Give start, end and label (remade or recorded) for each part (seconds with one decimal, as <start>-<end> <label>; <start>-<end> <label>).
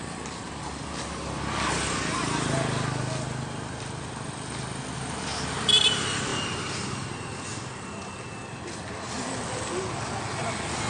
0.0-10.9 recorded